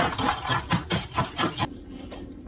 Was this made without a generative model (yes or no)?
yes